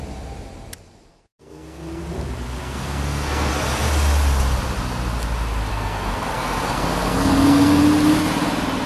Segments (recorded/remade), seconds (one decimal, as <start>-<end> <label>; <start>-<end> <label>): 0.0-1.1 recorded; 1.1-2.0 remade; 2.0-2.6 recorded; 2.6-3.5 remade; 3.5-5.7 recorded; 5.7-7.8 remade; 7.8-8.9 recorded